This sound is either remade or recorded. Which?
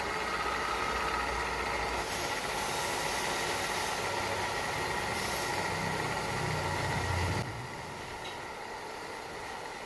recorded